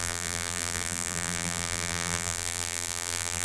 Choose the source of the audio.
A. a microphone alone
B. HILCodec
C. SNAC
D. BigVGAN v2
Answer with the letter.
D